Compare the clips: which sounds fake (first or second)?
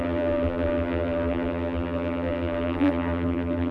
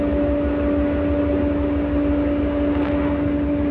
first